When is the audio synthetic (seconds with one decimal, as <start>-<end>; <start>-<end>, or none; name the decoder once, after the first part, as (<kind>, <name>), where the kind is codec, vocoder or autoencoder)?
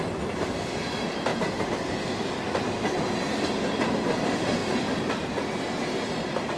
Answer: none